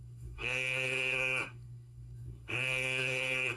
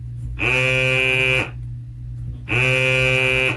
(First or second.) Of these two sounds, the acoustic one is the second